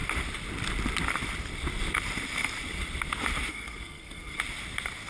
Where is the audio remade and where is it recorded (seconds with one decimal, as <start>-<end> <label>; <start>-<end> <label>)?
0.0-3.5 recorded; 3.5-4.4 remade; 4.4-5.1 recorded